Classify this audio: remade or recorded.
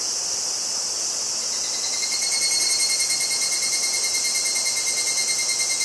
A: recorded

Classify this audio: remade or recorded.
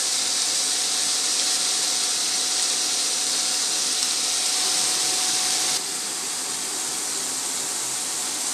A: recorded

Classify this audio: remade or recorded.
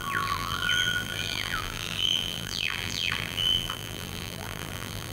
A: remade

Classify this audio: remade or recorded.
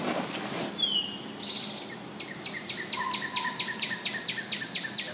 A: recorded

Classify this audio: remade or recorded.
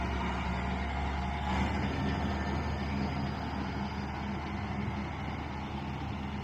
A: recorded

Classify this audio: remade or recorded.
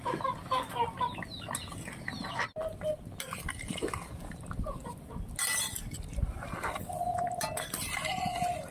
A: recorded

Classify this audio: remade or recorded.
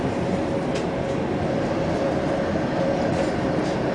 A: remade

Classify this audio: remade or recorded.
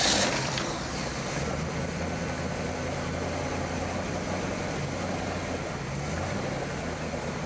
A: recorded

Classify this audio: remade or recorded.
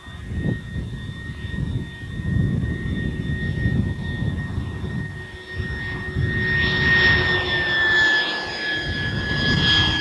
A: recorded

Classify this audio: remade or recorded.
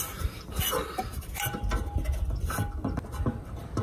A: recorded